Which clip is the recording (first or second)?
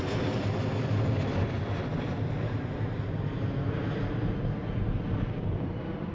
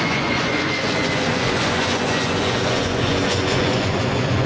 first